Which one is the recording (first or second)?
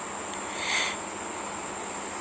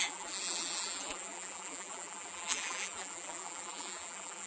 first